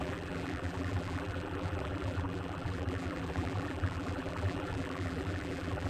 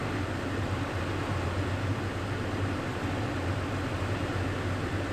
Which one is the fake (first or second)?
first